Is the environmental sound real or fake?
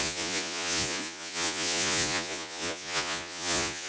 fake